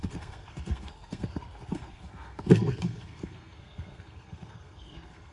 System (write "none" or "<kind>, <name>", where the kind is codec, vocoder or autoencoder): codec, SNAC